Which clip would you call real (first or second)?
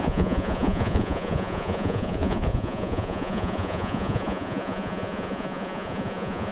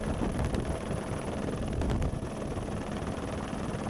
second